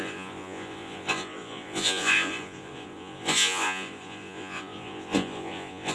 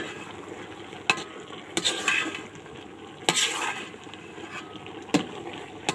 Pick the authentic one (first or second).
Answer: second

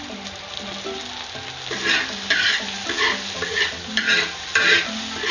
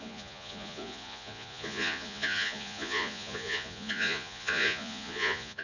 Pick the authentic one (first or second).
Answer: first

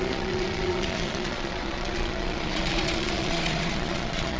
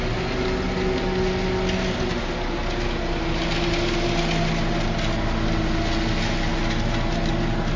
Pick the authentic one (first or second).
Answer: second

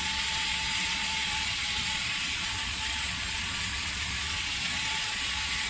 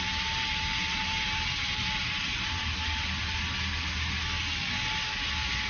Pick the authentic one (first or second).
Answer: second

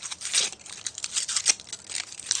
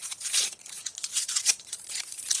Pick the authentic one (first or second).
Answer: first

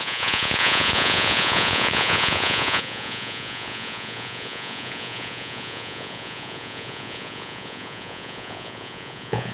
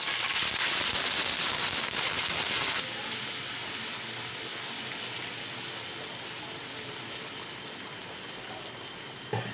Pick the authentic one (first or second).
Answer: second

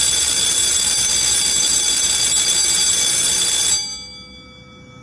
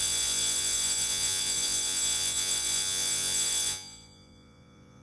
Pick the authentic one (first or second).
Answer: first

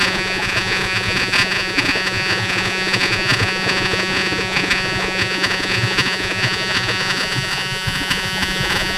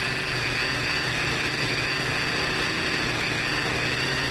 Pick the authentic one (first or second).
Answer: second